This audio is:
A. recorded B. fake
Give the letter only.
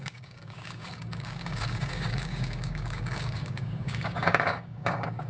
B